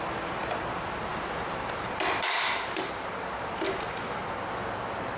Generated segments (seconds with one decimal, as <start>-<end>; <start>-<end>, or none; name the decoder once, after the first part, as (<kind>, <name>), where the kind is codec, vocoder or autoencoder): 1.1-4.2 (vocoder, BigVGAN v2)